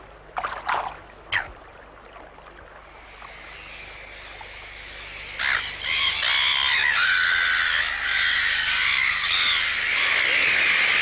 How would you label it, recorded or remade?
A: recorded